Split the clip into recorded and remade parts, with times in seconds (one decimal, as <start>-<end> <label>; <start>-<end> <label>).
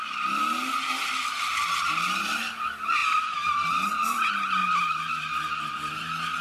0.0-3.0 recorded; 3.0-3.5 remade; 3.5-4.6 recorded; 4.6-5.7 remade; 5.7-6.4 recorded